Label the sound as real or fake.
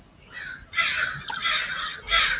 real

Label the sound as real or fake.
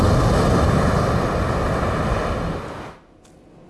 real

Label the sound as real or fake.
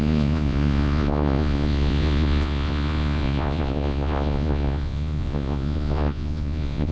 fake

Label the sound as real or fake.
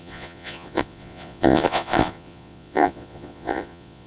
fake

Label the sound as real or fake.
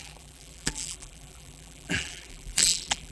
fake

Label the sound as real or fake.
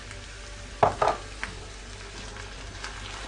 real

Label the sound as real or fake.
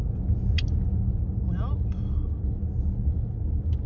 real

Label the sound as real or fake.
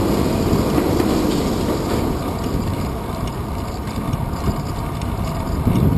fake